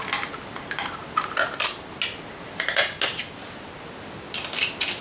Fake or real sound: real